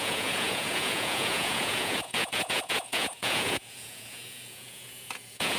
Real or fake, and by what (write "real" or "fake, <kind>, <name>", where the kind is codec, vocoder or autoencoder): fake, vocoder, Vocos